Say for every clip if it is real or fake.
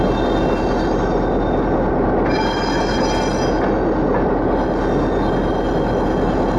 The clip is real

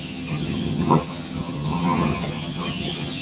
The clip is fake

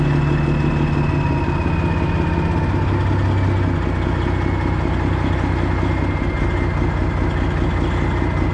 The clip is real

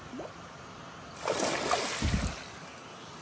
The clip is real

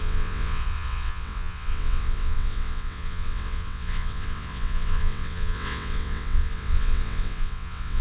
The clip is fake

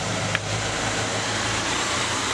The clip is fake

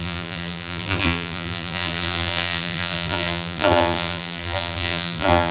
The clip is fake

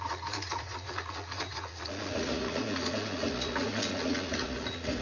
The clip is fake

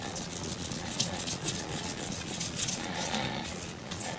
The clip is fake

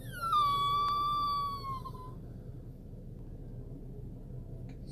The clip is real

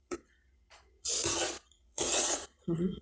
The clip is fake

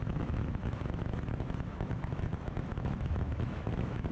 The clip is fake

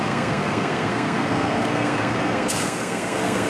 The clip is fake